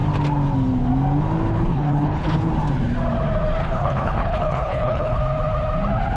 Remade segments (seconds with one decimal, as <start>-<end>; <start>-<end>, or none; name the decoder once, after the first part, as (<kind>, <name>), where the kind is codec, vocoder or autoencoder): 1.5-2.5 (codec, HILCodec); 3.6-5.2